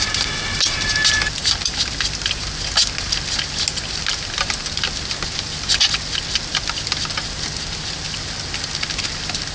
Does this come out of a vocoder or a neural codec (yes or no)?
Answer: no